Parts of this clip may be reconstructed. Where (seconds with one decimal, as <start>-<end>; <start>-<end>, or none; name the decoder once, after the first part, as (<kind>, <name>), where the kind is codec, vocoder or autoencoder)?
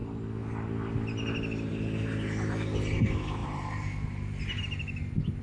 3.4-4.6 (vocoder, BigVGAN v2)